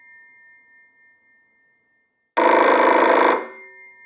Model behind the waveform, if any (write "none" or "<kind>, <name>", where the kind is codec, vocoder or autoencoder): none